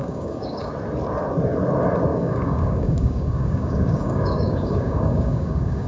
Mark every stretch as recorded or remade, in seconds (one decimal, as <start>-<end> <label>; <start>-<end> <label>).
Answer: 0.0-0.7 remade; 0.7-2.1 recorded; 2.1-5.9 remade